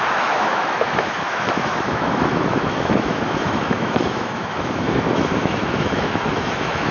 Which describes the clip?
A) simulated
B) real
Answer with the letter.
A